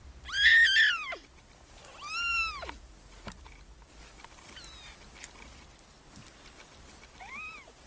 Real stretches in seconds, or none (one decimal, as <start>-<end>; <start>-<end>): 0.0-7.9